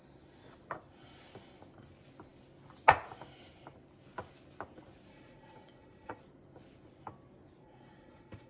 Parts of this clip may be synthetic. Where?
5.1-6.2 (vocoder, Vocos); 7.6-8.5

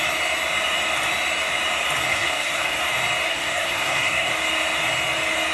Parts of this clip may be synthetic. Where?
2.1-2.8 (codec, SNAC); 3.3-4.3

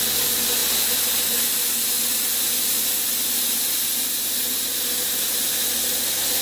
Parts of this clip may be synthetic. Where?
none

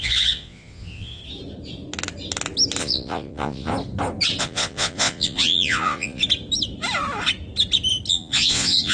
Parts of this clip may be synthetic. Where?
0.0-1.2 (vocoder, Vocos); 2.8-3.7; 4.4-6.2; 8.1-8.9

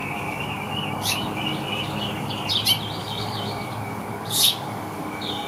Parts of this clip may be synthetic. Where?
0.0-2.5 (codec, DAC); 3.0-5.5

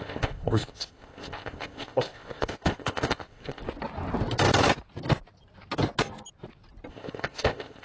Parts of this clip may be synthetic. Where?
0.0-3.6 (codec, ZipCodec); 6.9-7.8

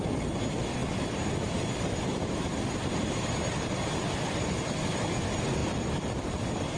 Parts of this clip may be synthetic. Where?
none